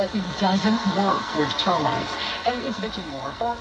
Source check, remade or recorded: remade